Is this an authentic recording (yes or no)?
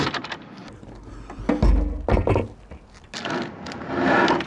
yes